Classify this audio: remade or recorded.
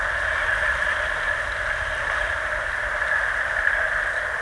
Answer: recorded